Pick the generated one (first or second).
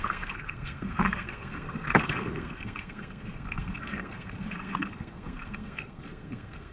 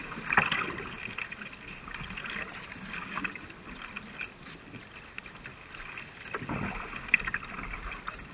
first